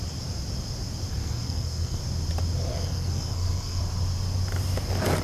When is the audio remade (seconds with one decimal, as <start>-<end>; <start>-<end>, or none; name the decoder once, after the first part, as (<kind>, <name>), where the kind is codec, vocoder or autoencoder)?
1.1-2.0 (codec, SNAC); 2.7-3.8